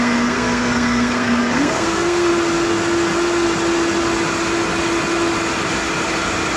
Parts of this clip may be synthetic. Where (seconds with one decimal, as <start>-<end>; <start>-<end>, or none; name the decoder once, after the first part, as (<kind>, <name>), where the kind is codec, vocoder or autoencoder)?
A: 0.0-2.3 (codec, SNAC)